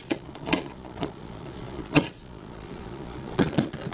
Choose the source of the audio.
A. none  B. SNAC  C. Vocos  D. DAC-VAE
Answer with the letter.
C